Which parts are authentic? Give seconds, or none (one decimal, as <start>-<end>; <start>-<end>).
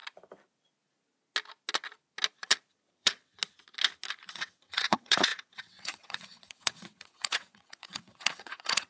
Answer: 0.0-2.9; 3.4-4.3